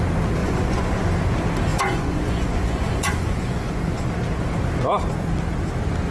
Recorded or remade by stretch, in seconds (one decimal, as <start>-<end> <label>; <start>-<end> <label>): 0.0-0.4 recorded; 0.4-1.1 remade; 1.1-1.7 recorded; 1.7-4.1 remade; 4.1-6.1 recorded